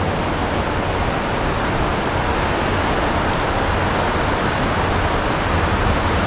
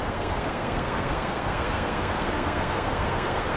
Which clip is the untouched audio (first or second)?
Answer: first